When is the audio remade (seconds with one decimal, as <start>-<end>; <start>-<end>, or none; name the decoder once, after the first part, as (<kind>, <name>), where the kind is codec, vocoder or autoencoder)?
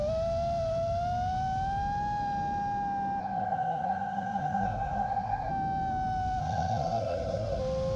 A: 3.2-5.5 (codec, SNAC); 6.4-7.6